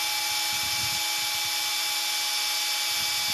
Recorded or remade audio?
recorded